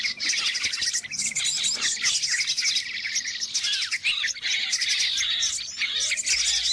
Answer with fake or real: real